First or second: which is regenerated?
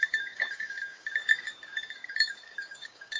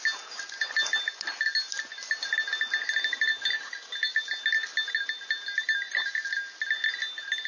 first